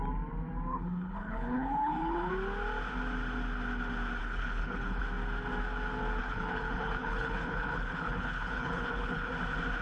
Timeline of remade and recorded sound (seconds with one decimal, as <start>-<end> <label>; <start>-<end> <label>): 0.0-0.7 recorded; 0.7-2.3 remade; 2.3-4.2 recorded; 4.2-5.0 remade; 5.0-6.2 recorded; 6.2-9.3 remade; 9.3-9.8 recorded